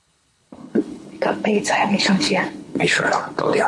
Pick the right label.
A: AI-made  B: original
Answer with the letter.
A